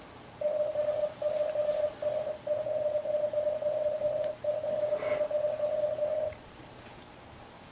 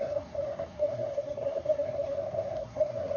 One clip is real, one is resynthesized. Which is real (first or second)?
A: first